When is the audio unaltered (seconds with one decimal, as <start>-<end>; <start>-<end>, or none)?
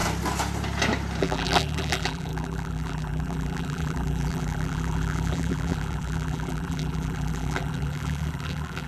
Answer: 0.0-1.2